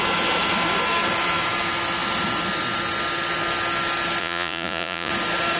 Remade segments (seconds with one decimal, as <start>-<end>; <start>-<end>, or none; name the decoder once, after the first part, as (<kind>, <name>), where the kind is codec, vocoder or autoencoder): 4.2-5.1 (vocoder, Vocos)